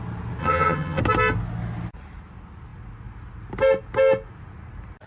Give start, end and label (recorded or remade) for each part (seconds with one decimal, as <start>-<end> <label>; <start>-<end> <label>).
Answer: 0.0-0.4 recorded; 0.4-1.0 remade; 1.0-5.1 recorded